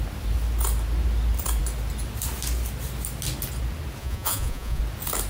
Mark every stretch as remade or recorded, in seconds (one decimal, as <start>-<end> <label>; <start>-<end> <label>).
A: 0.0-4.0 recorded; 4.0-4.8 remade; 4.8-5.3 recorded